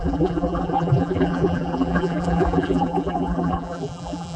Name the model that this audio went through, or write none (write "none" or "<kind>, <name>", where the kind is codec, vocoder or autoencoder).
vocoder, BigVGAN v2